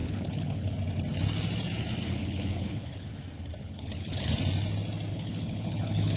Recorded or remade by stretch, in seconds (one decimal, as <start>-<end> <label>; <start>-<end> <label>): 0.0-0.7 remade; 0.7-2.2 recorded; 2.2-3.2 remade; 3.2-3.6 recorded; 3.6-4.3 remade; 4.3-5.1 recorded; 5.1-6.2 remade